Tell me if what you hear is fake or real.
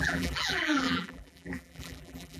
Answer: fake